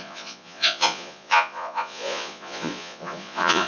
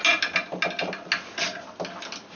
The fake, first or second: first